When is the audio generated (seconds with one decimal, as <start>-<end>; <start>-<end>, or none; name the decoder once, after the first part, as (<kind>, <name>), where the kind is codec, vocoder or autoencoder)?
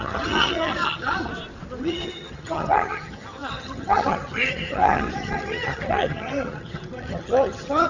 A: 0.0-1.3 (vocoder, HiFi-GAN); 1.8-7.9